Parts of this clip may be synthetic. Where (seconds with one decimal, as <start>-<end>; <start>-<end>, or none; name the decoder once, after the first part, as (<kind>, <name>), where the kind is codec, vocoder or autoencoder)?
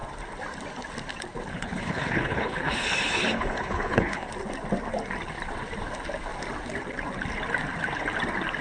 1.5-4.3 (codec, HILCodec)